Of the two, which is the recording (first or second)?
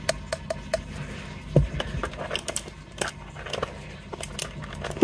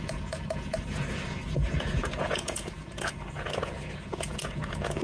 first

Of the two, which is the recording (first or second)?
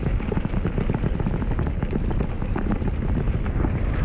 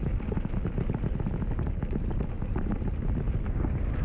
second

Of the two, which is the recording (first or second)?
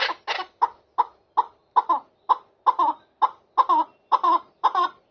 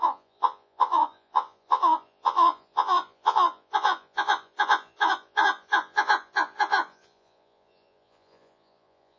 first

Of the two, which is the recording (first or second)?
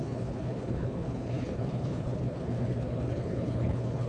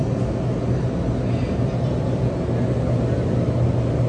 second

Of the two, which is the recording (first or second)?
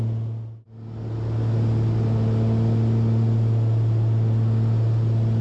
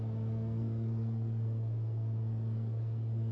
first